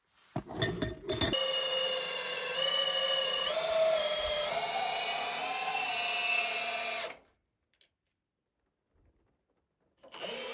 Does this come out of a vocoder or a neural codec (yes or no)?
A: no